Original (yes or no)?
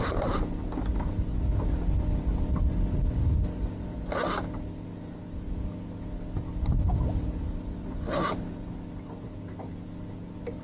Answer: yes